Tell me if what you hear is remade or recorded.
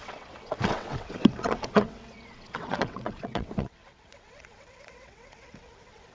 remade